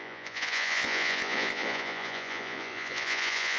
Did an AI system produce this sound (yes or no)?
yes